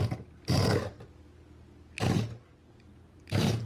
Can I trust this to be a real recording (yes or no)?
yes